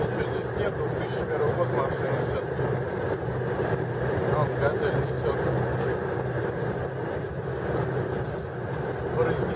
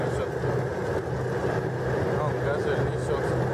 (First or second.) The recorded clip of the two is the second